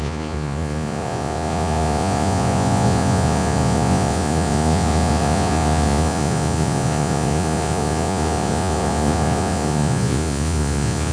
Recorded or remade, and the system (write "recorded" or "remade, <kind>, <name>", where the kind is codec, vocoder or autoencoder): remade, vocoder, Vocos